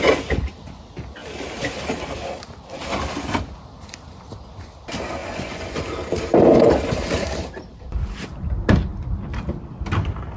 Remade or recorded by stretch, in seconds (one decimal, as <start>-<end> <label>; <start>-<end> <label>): 0.0-5.2 recorded; 5.2-5.8 remade; 5.8-10.4 recorded